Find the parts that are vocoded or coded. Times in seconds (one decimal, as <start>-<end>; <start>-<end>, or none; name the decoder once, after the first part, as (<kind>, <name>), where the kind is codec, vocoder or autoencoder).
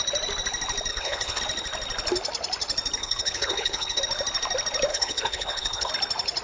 0.9-1.4 (codec, HILCodec); 3.0-4.0; 4.9-5.9